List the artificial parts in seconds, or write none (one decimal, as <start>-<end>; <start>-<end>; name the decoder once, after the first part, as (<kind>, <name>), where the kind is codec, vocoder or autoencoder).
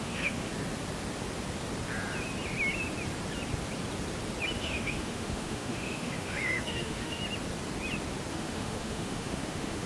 0.0-0.5 (autoencoder, DAC-VAE); 4.6-7.2; 8.3-9.9